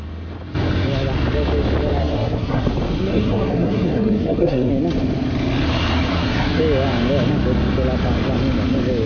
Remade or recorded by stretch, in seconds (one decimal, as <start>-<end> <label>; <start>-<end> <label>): 0.0-2.0 recorded; 2.0-2.7 remade; 2.7-3.1 recorded; 3.1-4.7 remade; 4.7-6.1 recorded; 6.1-6.6 remade; 6.6-9.1 recorded